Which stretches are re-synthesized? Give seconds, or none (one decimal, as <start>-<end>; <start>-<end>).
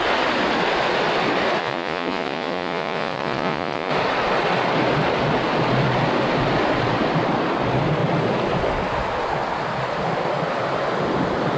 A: 1.6-3.9